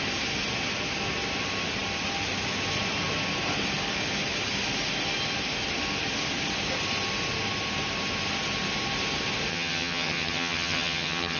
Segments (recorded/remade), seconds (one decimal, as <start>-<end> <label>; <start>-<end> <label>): 0.0-9.5 recorded; 9.5-11.4 remade